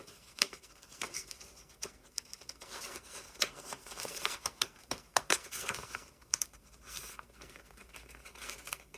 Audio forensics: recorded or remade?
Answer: remade